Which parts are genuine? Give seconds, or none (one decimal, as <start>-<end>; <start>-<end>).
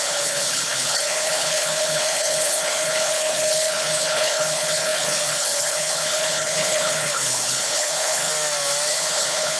8.3-8.9